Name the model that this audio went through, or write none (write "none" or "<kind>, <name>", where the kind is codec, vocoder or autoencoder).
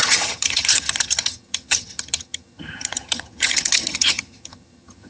vocoder, HiFi-GAN